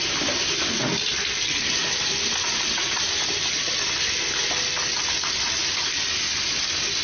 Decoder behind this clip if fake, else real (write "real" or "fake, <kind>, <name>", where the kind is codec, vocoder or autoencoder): real